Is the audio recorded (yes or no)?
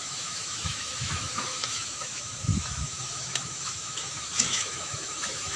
no